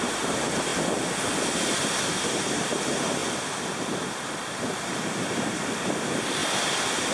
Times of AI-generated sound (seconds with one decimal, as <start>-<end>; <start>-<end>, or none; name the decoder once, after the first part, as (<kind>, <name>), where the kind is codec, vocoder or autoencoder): 0.0-0.7 (vocoder, BigVGAN v2); 1.7-3.2; 4.8-6.4